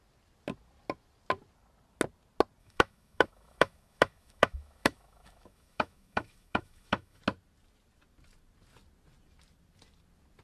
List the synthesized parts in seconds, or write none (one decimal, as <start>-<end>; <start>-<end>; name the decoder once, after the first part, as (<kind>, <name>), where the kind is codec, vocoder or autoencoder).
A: 2.6-7.2 (autoencoder, DAC-VAE)

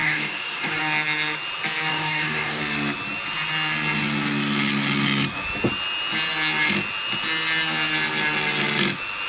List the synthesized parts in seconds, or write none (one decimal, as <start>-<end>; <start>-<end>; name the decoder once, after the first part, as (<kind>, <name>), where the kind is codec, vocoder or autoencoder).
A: 0.0-0.8 (codec, DAC); 1.9-2.6

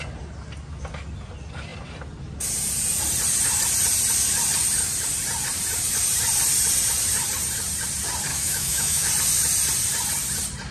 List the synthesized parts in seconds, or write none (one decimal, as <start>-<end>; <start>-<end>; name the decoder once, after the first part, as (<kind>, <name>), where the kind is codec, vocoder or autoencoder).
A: 8.3-9.1 (autoencoder, DAC-VAE)